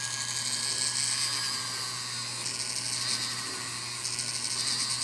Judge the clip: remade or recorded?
recorded